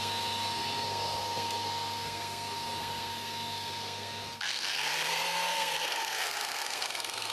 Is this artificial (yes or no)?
yes